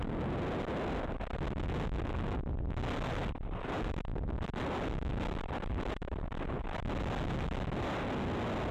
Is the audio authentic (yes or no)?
yes